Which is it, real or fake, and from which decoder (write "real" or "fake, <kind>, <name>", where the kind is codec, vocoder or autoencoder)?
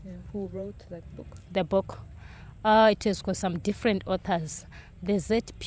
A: fake, vocoder, BigVGAN v2